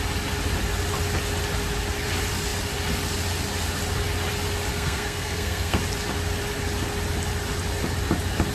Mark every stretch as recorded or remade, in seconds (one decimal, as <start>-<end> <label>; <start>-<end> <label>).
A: 0.0-4.7 recorded; 4.7-5.8 remade; 5.8-8.5 recorded